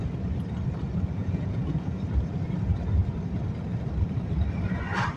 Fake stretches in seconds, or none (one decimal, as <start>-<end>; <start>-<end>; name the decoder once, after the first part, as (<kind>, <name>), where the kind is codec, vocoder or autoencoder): 1.2-2.0 (vocoder, Vocos)